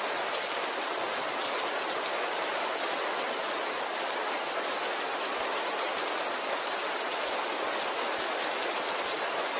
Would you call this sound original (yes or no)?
yes